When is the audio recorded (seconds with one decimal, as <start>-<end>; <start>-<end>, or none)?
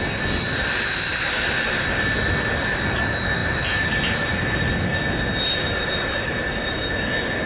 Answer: 0.0-1.1; 3.0-7.5